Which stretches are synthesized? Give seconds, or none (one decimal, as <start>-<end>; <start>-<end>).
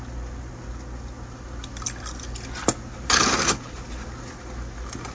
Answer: none